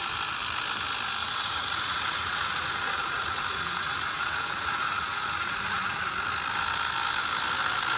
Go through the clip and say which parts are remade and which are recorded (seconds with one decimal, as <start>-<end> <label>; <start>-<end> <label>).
0.0-1.2 recorded; 1.2-6.0 remade; 6.0-8.0 recorded